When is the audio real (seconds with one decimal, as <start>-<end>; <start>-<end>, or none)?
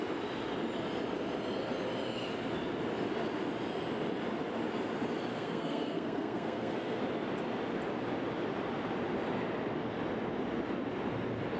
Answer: 0.0-5.3; 7.0-11.6